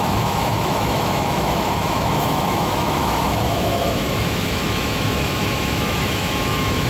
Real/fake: fake